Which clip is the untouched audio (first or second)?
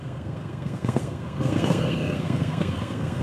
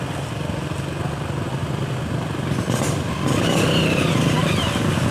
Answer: second